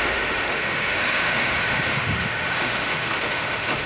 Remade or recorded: remade